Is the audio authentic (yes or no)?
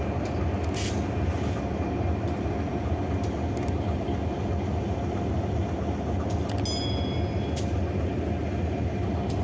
yes